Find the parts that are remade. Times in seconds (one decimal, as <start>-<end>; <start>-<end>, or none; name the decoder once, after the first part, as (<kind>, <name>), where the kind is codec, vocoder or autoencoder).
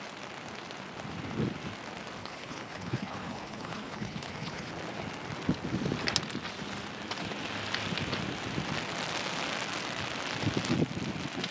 2.2-4.7 (codec, HILCodec)